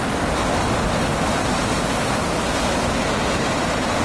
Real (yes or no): yes